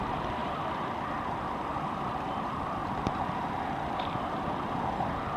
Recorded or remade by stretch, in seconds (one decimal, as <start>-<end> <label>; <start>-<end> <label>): 0.0-5.4 recorded